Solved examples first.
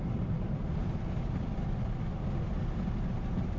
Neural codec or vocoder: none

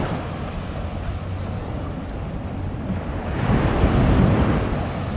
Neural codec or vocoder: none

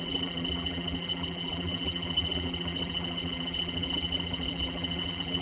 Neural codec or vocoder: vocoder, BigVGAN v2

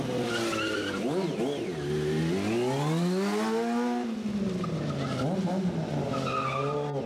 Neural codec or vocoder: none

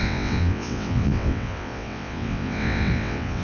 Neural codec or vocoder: vocoder, WaveNeXt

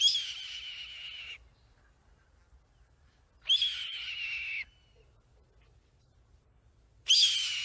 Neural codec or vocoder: none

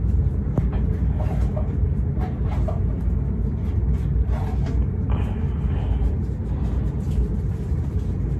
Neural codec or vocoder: none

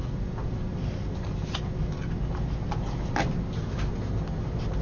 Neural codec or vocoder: none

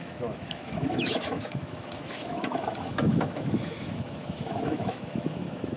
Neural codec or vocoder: autoencoder, DAC-VAE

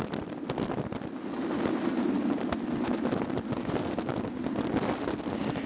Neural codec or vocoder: none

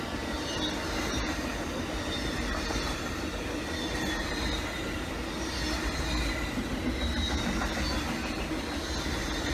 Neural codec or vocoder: none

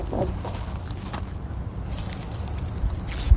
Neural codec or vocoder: none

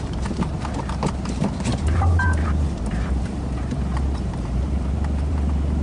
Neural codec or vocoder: vocoder, BigVGAN v2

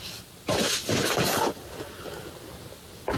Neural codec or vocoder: none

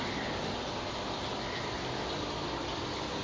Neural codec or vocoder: vocoder, BigVGAN v2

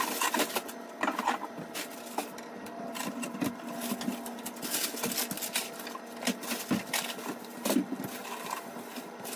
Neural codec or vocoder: none